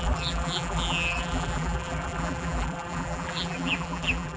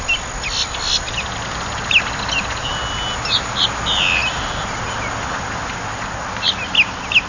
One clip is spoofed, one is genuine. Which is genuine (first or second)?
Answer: second